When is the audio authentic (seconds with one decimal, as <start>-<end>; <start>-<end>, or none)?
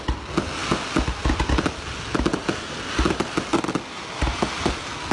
0.0-5.1